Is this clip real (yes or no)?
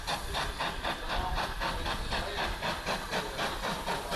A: yes